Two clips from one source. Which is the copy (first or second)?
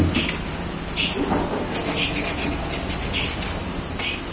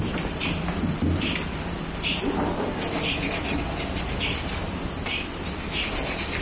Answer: second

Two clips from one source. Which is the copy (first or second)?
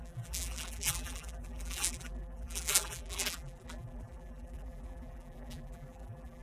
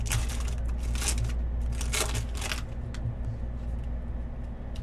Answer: first